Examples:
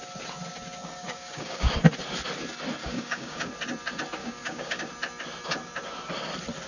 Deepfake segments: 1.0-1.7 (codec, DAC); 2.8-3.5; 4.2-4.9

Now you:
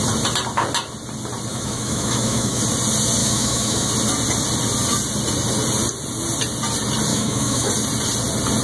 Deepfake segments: 1.5-2.6 (autoencoder, DAC-VAE); 3.2-3.9; 7.1-7.7